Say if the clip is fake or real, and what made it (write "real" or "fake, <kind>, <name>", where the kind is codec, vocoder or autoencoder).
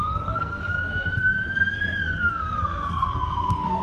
fake, codec, SNAC